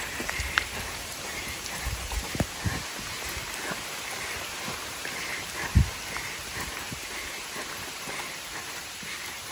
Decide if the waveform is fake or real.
fake